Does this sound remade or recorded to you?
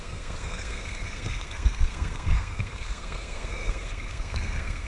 remade